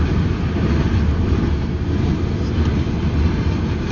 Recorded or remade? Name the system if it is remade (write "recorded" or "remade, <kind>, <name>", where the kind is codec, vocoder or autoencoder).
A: recorded